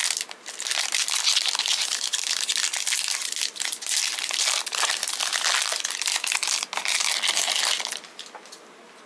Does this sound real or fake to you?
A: real